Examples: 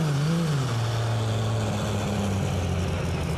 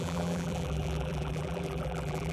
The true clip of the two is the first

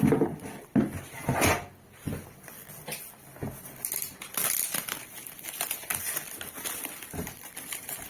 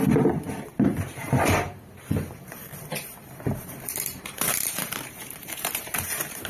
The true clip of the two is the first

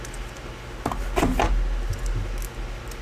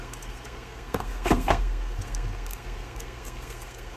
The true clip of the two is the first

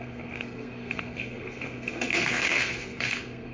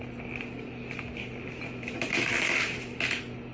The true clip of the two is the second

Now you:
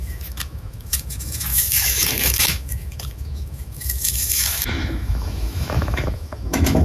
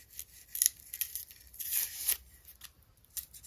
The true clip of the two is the second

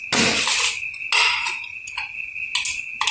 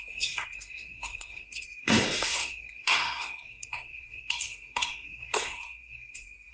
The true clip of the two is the first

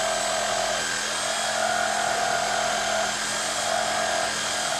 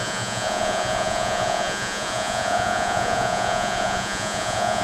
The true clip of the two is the first